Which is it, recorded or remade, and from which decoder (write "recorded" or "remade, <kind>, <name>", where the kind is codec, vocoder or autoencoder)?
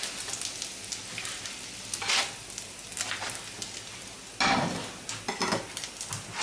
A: recorded